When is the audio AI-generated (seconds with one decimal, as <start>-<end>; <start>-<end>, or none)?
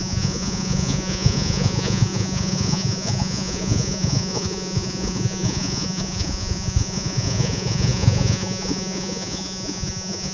0.0-10.3